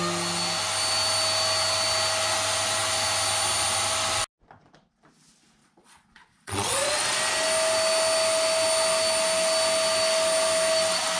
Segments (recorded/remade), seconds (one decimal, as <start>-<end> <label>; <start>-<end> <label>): 0.0-5.6 recorded; 5.6-7.2 remade; 7.2-11.2 recorded